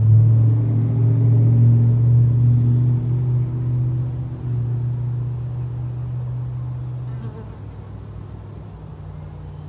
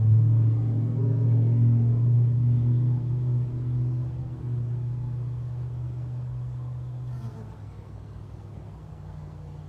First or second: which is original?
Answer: first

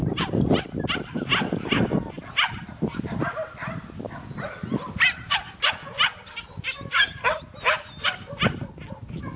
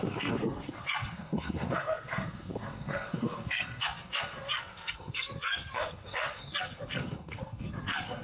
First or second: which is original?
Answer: first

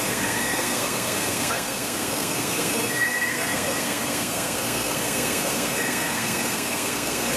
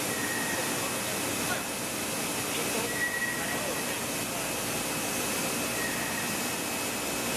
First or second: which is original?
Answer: second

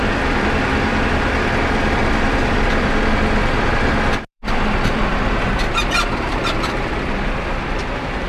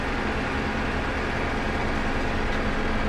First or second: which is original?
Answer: second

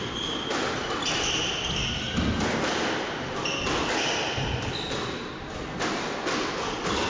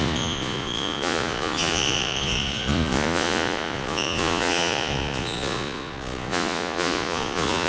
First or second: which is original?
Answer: first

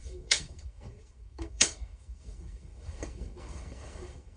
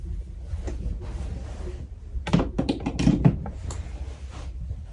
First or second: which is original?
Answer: second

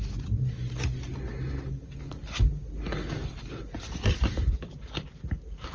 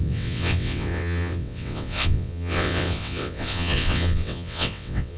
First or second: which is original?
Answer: first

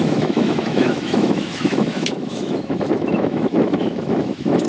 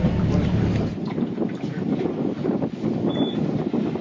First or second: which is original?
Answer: second